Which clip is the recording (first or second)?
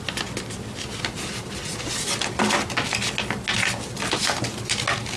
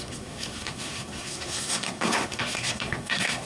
first